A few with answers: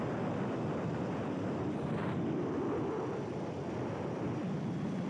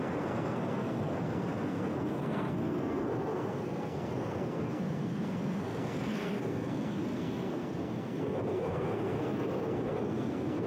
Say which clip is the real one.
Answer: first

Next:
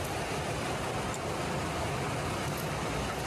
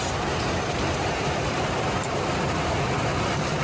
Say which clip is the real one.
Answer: first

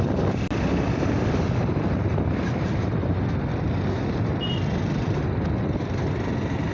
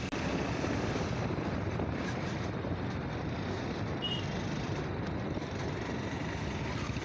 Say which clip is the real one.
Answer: first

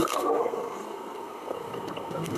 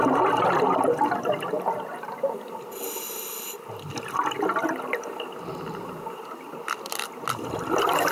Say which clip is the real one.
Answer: second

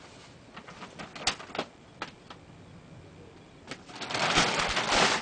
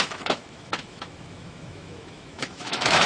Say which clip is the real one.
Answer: first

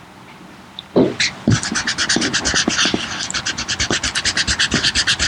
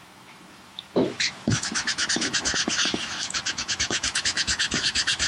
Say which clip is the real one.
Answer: first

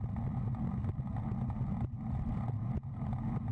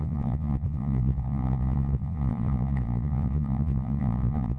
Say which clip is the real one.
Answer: first